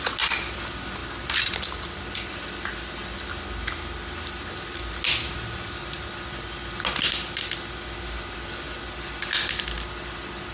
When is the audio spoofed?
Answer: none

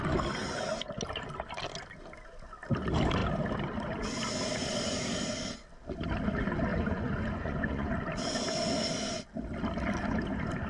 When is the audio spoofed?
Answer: 6.7-7.9 (vocoder, Vocos)

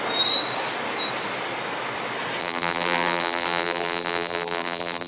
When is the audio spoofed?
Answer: 2.4-5.1 (vocoder, BigVGAN v2)

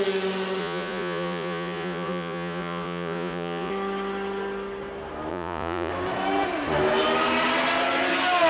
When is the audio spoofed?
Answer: 0.6-3.7 (vocoder, Vocos); 5.3-5.9

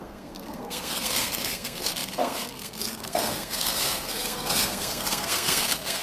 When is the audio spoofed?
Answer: 0.0-6.0 (codec, SNAC)

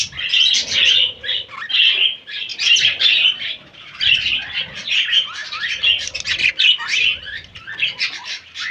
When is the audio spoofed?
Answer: 2.5-4.6 (vocoder, BigVGAN v2); 5.4-6.5

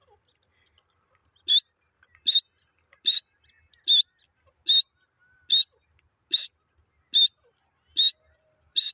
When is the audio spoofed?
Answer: none